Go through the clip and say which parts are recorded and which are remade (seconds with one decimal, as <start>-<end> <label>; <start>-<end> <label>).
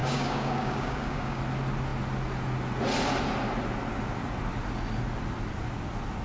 0.0-1.4 remade; 1.4-6.2 recorded